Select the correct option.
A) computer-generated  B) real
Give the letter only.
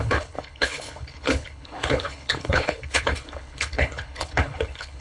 A